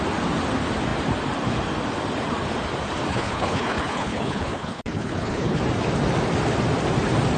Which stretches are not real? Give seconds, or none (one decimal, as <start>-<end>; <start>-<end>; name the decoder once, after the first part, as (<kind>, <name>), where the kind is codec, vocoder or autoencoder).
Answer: 3.1-5.6 (codec, HILCodec)